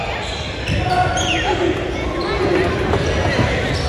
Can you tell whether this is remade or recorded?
recorded